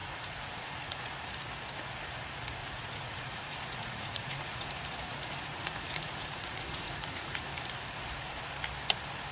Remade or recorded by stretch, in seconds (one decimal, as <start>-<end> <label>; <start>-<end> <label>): 0.0-1.1 remade; 1.1-2.6 recorded; 2.6-4.7 remade; 4.7-5.6 recorded; 5.6-7.4 remade; 7.4-9.3 recorded